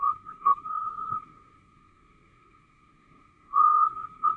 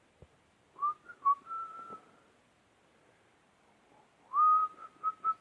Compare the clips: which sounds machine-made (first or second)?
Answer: first